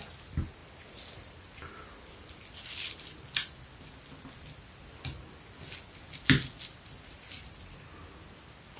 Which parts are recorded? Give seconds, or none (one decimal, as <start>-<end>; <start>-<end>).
0.0-8.8

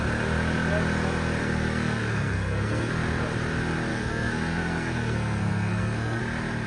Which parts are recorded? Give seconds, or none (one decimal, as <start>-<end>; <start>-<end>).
0.0-1.4; 2.9-3.9; 6.2-6.7

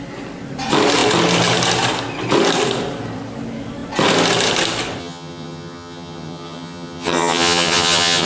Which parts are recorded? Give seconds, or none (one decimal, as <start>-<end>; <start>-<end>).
0.0-5.0

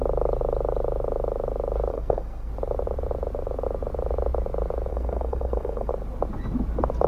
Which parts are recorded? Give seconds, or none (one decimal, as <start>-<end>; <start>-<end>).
0.0-1.9; 2.5-4.9; 5.9-7.1